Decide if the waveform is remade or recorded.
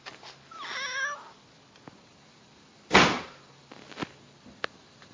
recorded